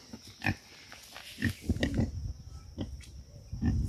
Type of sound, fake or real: real